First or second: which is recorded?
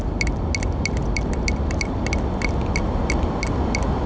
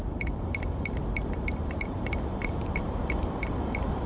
first